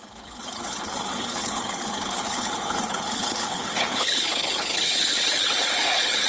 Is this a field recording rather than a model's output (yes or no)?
no